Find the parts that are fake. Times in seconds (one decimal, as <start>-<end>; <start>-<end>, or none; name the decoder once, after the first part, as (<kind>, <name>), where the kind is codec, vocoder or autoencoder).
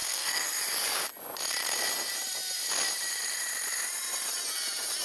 0.0-0.5 (codec, SNAC)